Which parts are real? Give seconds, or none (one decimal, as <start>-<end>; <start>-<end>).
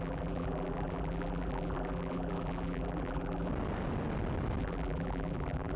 3.5-4.6